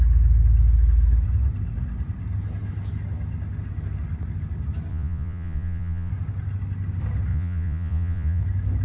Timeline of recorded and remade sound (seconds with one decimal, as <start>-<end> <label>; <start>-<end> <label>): 0.0-4.9 recorded; 4.9-6.1 remade; 6.1-7.3 recorded; 7.3-8.4 remade; 8.4-8.8 recorded